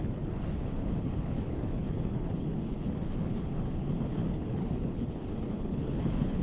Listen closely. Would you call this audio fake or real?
fake